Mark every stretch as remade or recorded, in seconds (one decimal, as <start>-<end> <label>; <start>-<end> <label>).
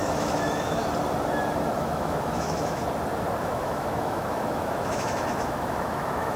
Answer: 0.0-0.8 remade; 0.8-1.8 recorded; 1.8-2.8 remade; 2.8-3.4 recorded; 3.4-6.4 remade